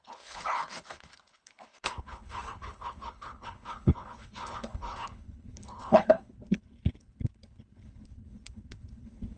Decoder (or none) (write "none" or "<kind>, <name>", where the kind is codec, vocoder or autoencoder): codec, HILCodec